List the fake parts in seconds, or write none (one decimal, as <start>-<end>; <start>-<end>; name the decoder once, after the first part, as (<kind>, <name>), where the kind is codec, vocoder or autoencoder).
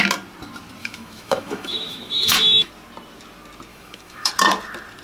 0.8-2.7 (autoencoder, DAC-VAE); 3.7-4.3